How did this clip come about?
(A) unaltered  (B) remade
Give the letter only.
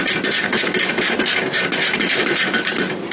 A